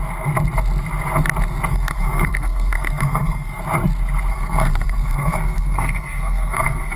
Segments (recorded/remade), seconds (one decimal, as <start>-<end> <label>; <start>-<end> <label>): 0.0-1.7 recorded; 1.7-3.6 remade; 3.6-4.3 recorded; 4.3-7.0 remade